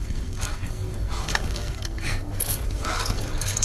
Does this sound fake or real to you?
fake